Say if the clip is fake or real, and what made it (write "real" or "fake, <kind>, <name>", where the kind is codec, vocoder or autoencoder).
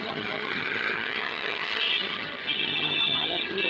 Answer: fake, vocoder, HiFi-GAN